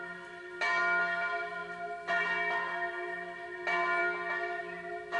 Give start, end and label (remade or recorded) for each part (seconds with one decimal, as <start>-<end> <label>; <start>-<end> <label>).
0.0-5.2 recorded